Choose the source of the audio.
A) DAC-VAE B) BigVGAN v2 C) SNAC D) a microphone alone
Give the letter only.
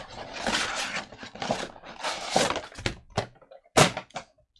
D